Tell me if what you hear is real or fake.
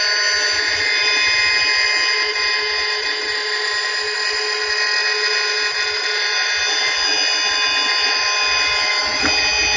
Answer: real